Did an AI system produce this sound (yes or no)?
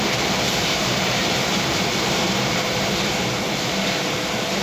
yes